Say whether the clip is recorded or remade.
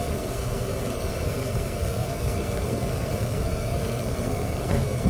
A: remade